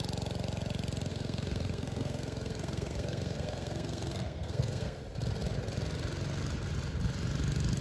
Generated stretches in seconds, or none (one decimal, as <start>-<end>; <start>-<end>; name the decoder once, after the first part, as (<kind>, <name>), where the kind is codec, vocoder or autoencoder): 1.1-5.0 (codec, SNAC)